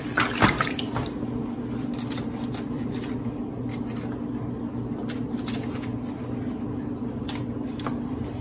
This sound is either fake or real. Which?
real